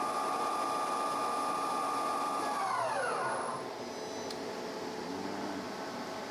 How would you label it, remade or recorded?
recorded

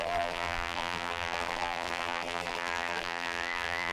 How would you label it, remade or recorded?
remade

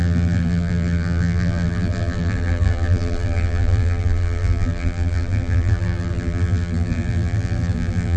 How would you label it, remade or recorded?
remade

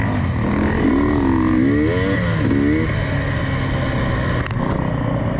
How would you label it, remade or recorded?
recorded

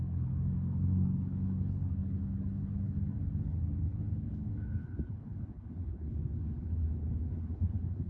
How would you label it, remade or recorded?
remade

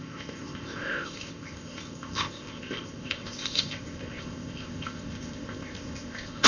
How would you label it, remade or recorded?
remade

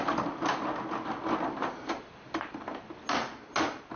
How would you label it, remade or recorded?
recorded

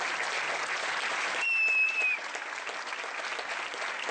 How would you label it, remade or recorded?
recorded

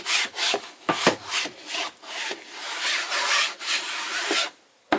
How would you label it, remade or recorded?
recorded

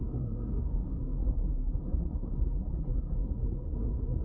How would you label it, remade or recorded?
remade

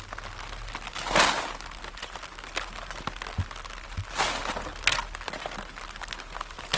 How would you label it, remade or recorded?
recorded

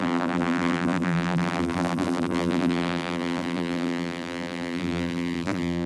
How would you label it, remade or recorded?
remade